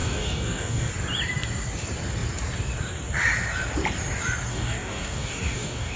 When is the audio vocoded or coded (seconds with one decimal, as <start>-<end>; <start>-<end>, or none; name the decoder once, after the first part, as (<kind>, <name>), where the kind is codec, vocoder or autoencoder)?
0.0-0.9 (codec, DAC); 4.5-6.0